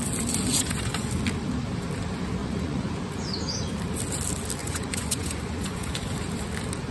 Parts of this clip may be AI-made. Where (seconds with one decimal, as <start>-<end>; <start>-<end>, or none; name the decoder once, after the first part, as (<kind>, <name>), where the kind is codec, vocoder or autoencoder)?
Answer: 0.5-1.1 (vocoder, Vocos); 2.4-2.9; 4.6-5.9